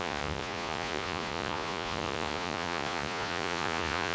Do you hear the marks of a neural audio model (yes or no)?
yes